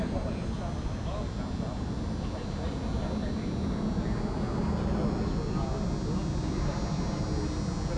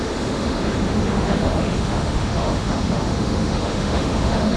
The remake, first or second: second